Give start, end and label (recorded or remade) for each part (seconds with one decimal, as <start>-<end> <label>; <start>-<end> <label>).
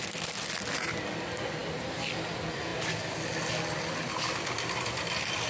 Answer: 0.0-5.5 recorded